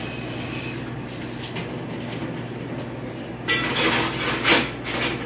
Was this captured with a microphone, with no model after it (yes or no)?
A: yes